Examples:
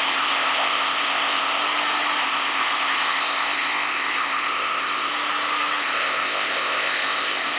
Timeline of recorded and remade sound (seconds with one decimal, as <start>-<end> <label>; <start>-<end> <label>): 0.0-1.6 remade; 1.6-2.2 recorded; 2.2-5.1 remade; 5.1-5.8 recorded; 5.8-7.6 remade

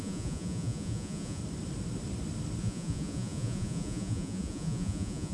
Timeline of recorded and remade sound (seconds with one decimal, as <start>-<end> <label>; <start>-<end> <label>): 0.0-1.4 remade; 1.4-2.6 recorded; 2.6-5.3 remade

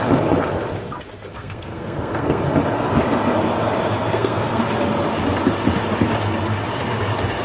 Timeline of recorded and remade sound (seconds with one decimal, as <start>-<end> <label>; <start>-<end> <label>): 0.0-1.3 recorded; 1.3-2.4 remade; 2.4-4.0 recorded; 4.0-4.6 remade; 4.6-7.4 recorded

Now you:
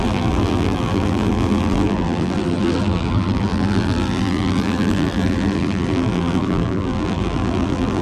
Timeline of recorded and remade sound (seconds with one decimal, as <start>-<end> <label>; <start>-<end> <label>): 0.0-8.0 remade